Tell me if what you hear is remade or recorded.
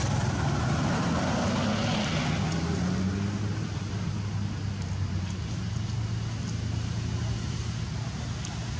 recorded